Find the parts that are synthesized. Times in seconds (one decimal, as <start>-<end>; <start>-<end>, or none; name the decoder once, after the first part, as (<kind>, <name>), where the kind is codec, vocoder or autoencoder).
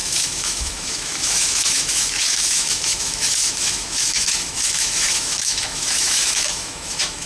0.0-7.3 (autoencoder, DAC-VAE)